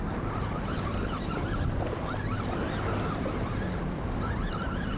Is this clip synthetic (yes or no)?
no